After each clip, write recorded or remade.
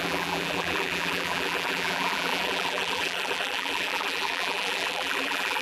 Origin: remade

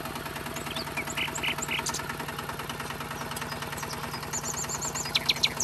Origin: recorded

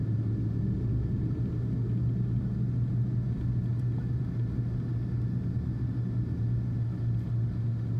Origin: recorded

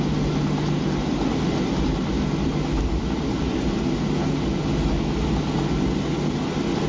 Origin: recorded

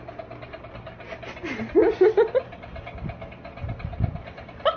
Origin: recorded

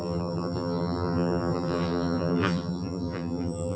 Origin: remade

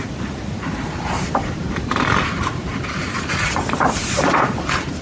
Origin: remade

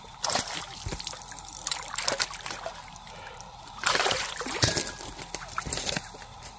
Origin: remade